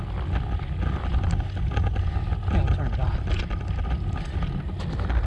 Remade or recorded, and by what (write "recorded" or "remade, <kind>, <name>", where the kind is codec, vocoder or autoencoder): recorded